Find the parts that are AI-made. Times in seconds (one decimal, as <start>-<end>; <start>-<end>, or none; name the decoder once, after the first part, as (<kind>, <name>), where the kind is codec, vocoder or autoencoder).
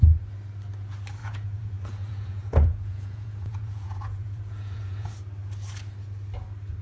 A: 1.2-5.1 (vocoder, Vocos)